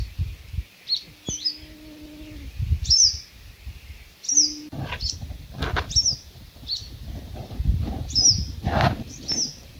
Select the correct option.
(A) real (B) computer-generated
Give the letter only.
B